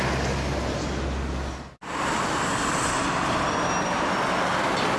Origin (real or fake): real